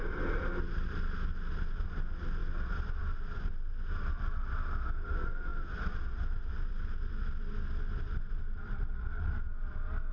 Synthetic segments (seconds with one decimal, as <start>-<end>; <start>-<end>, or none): none